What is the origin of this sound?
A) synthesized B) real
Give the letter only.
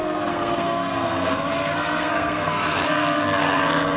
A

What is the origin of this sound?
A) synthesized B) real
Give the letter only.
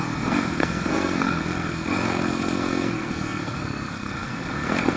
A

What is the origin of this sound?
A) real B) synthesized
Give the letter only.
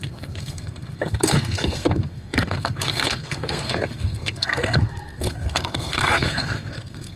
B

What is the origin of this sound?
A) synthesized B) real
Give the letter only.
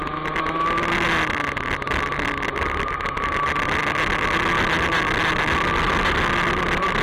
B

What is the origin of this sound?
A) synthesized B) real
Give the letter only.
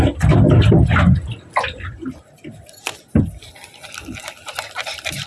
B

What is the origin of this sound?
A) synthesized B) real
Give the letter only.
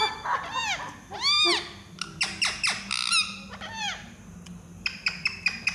B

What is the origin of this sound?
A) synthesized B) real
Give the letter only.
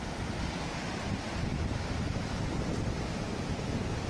B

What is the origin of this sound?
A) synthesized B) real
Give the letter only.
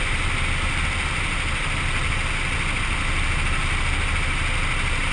B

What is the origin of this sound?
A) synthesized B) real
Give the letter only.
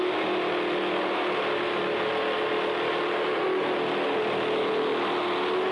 B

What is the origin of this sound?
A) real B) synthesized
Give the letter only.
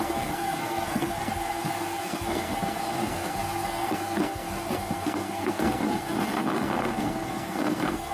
B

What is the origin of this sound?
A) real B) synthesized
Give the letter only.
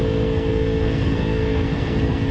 B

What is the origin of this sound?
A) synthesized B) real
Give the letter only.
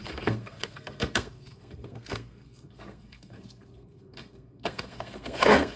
A